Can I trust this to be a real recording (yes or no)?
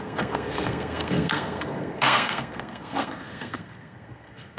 no